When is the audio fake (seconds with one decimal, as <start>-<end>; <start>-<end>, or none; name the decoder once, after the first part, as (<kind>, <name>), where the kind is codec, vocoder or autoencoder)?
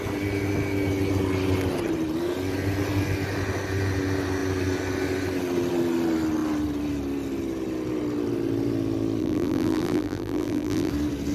9.2-10.9 (vocoder, BigVGAN v2)